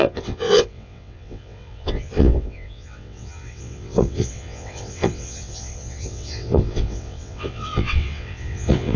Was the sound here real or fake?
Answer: fake